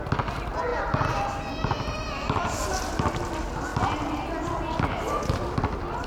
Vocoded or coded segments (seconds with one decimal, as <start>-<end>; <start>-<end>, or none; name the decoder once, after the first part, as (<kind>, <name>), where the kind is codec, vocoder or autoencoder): none